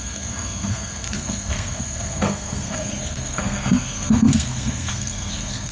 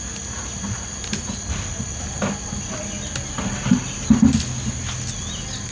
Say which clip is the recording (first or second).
second